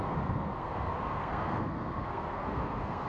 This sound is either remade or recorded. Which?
remade